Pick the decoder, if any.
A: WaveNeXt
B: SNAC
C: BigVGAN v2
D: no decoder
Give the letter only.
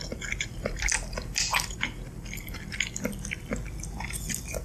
D